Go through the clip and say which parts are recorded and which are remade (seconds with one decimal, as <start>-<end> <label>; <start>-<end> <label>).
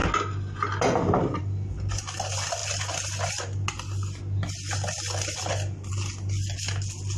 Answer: 0.0-7.2 recorded